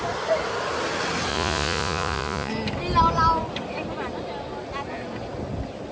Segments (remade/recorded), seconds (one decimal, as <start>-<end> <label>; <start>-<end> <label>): 0.0-1.3 recorded; 1.3-2.5 remade; 2.5-5.9 recorded